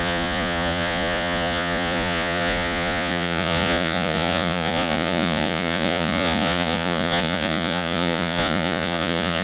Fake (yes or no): yes